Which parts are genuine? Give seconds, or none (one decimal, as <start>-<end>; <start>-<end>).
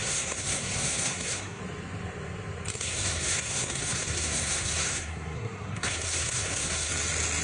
1.6-2.7; 6.9-7.4